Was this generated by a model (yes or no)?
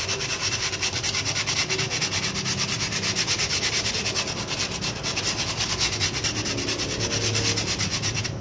no